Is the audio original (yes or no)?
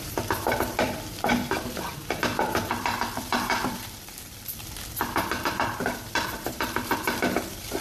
no